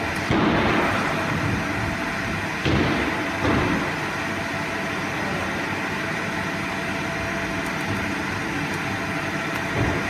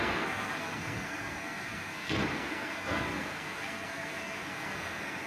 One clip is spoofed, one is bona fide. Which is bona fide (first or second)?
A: first